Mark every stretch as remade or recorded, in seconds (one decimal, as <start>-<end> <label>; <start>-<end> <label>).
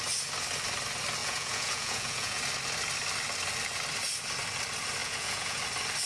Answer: 0.0-1.2 recorded; 1.2-2.4 remade; 2.4-5.0 recorded; 5.0-5.6 remade; 5.6-6.1 recorded